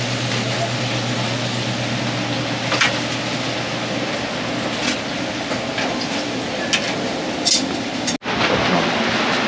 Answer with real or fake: real